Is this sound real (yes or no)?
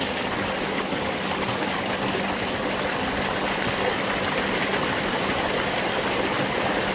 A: yes